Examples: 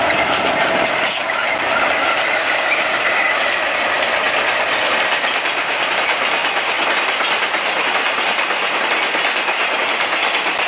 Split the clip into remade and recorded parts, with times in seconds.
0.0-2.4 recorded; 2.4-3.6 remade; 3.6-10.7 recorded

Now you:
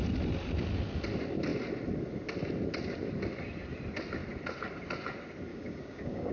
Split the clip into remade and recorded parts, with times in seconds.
0.0-5.5 recorded; 5.5-6.3 remade

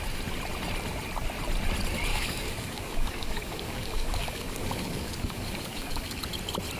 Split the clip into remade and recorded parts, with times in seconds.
0.0-2.1 recorded; 2.1-6.2 remade; 6.2-6.8 recorded

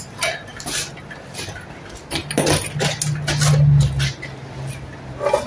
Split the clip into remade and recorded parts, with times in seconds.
0.0-5.5 recorded

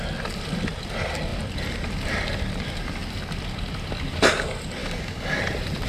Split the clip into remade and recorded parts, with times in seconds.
0.0-4.8 recorded; 4.8-5.4 remade; 5.4-5.9 recorded